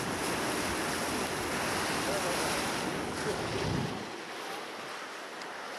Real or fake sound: real